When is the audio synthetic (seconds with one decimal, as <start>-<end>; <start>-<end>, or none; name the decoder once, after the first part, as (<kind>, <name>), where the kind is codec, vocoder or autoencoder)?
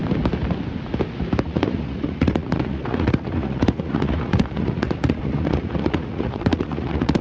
1.4-7.2 (vocoder, Vocos)